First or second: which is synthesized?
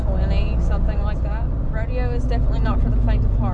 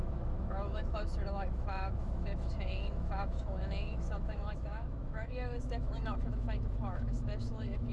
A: second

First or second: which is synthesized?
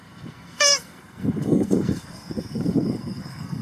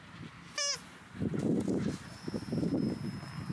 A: first